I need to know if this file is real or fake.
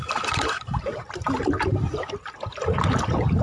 real